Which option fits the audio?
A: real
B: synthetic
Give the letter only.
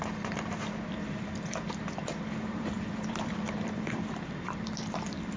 B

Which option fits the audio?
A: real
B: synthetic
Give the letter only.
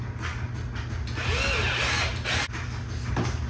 A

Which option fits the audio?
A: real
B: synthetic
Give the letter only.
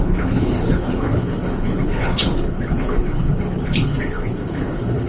B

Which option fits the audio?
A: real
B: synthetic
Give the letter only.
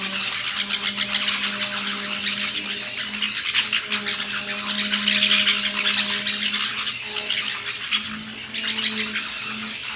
A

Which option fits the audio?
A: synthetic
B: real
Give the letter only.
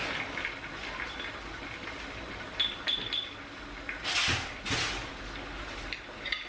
B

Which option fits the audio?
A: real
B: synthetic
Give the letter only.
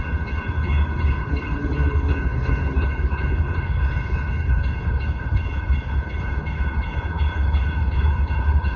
B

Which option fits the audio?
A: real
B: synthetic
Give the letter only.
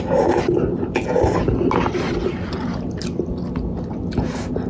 A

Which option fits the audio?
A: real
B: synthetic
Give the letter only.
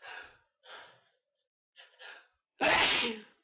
B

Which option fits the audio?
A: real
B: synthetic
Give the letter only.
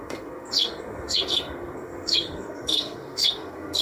B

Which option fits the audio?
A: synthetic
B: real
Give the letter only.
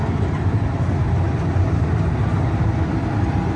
B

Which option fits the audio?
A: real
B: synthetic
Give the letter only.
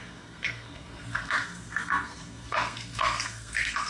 B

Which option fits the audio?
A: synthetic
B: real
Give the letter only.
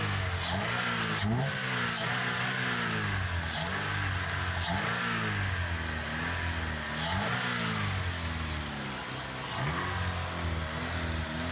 B